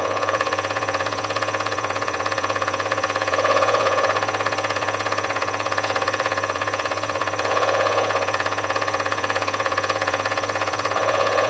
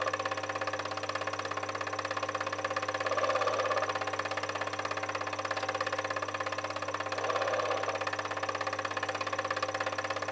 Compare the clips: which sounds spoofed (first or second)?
first